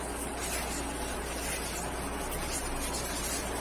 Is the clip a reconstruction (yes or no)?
no